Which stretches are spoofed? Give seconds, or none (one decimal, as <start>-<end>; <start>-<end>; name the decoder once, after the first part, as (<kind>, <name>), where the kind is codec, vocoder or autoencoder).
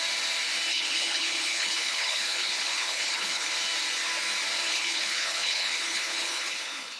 0.7-3.5 (codec, HILCodec); 4.7-7.0